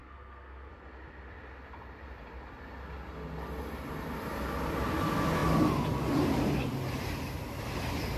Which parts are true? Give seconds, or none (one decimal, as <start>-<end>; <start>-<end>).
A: 0.7-8.2